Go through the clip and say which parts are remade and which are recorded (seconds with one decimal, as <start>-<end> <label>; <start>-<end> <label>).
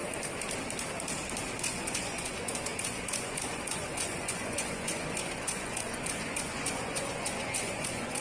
0.0-1.6 recorded; 1.6-8.2 remade